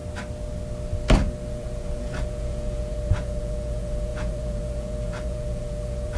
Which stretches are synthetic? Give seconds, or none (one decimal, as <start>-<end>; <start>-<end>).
1.5-6.2

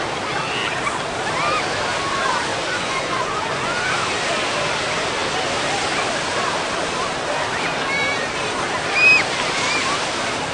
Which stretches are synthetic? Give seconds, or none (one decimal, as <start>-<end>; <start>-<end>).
2.5-3.9